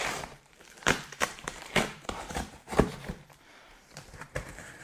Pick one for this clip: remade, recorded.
remade